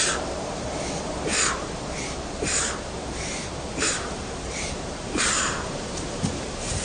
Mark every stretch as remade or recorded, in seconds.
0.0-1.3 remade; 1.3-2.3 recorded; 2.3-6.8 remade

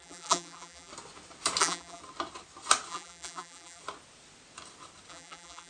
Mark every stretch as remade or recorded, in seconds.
0.0-0.9 remade; 0.9-1.6 recorded; 1.6-2.0 remade; 2.0-2.9 recorded; 2.9-3.8 remade; 3.8-5.1 recorded; 5.1-5.7 remade

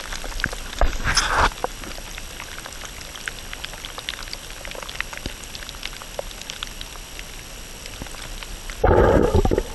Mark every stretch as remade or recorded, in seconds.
0.0-1.6 recorded; 1.6-2.2 remade; 2.2-9.7 recorded

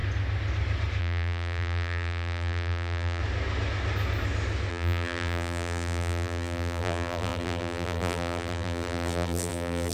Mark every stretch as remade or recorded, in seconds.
0.0-1.0 recorded; 1.0-3.2 remade; 3.2-4.7 recorded; 4.7-9.9 remade

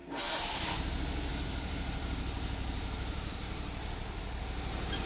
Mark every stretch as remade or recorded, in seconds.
0.0-0.6 remade; 0.6-1.3 recorded; 1.3-4.4 remade; 4.4-5.1 recorded

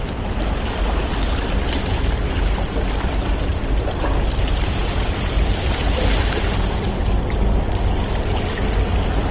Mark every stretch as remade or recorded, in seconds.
0.0-3.5 recorded; 3.5-7.8 remade; 7.8-9.3 recorded

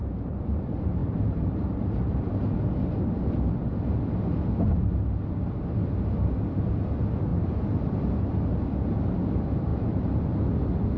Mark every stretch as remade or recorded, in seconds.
0.0-1.0 recorded; 1.0-2.4 remade; 2.4-9.7 recorded; 9.7-10.4 remade; 10.4-11.0 recorded

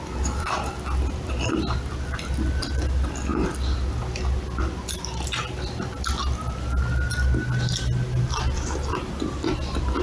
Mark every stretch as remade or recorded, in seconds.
0.0-10.0 recorded